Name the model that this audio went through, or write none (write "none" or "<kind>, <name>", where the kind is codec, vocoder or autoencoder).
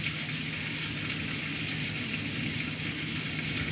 none